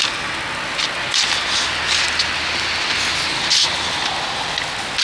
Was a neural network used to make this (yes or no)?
no